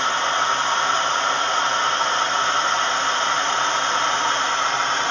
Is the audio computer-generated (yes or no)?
no